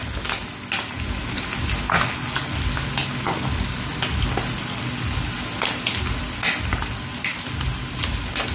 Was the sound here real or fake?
real